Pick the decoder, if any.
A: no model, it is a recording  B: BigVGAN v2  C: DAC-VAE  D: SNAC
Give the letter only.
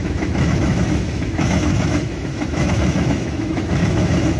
C